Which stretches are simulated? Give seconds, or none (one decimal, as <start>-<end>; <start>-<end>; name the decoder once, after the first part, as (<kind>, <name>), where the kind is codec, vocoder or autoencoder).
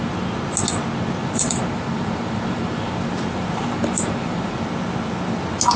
1.2-4.7 (vocoder, BigVGAN v2)